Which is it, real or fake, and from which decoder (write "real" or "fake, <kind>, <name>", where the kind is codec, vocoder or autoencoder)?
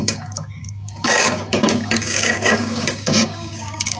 fake, codec, DAC